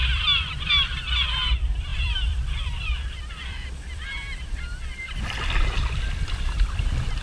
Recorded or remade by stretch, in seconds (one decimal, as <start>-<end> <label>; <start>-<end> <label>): 0.0-0.7 remade; 0.7-1.3 recorded; 1.3-4.7 remade; 4.7-6.0 recorded; 6.0-7.2 remade